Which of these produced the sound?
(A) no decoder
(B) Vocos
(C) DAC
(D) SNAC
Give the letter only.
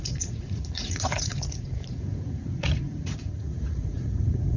B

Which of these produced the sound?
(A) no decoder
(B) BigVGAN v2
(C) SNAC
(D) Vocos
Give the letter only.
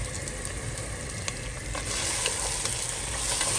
A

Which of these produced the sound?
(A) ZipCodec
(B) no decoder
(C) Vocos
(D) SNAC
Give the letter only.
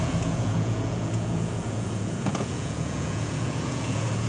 C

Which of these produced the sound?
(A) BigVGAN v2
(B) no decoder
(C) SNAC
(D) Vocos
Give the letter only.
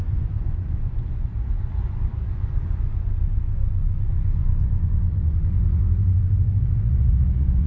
D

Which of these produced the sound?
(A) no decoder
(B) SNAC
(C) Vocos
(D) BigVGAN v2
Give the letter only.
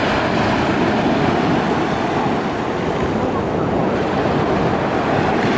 A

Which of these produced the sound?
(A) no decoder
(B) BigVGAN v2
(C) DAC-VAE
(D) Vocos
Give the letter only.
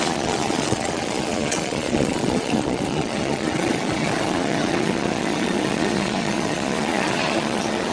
D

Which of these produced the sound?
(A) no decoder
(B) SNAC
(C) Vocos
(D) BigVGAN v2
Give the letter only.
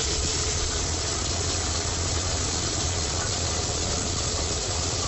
C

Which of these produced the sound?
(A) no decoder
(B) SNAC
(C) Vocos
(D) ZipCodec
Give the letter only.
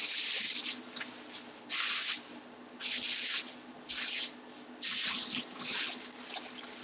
A